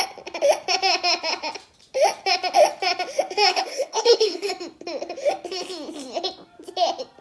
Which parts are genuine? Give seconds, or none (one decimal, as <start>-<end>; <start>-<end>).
0.0-3.5; 4.5-7.2